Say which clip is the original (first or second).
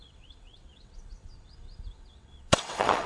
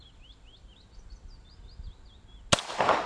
second